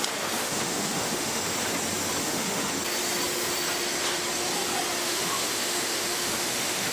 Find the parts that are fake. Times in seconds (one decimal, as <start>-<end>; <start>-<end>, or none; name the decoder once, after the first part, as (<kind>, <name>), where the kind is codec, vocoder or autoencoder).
0.4-1.4 (autoencoder, DAC-VAE); 2.2-2.7; 5.0-6.9